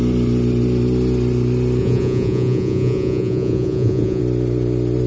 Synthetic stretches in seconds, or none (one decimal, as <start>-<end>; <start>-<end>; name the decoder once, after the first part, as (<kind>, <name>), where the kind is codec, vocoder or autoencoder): 1.8-4.2 (vocoder, Vocos)